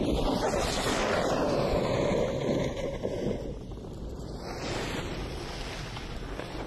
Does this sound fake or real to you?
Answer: real